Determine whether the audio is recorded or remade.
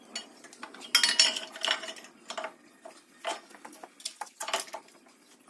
recorded